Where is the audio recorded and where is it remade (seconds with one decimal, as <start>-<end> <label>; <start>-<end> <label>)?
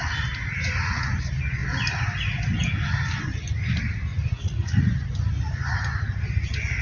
0.0-4.1 recorded; 4.1-4.9 remade; 4.9-6.8 recorded